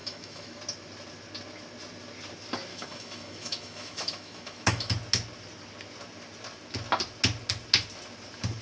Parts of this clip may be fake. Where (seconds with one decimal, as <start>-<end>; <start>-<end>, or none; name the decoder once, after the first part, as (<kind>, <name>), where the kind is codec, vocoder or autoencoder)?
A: 0.0-0.6 (autoencoder, DAC-VAE); 2.7-4.9